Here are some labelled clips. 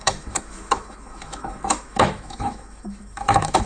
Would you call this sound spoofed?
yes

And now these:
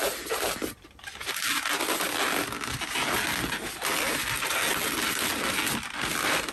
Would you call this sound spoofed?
no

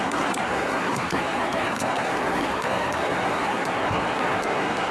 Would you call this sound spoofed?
yes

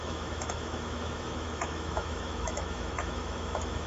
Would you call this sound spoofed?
yes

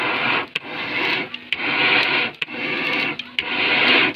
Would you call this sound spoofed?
no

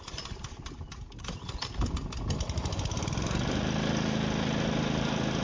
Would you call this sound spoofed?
no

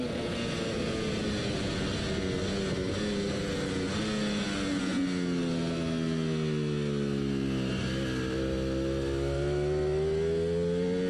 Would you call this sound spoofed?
no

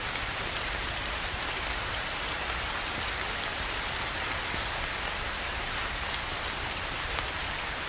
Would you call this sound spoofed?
no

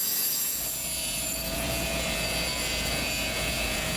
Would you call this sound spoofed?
yes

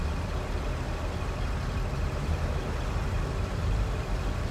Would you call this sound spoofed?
no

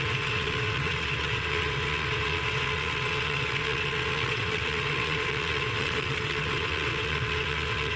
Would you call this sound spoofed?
yes